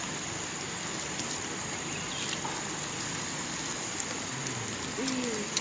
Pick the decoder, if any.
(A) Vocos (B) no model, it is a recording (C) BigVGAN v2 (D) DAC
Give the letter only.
B